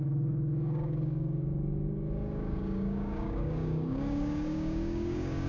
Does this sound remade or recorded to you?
remade